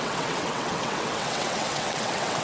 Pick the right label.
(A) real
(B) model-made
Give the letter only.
B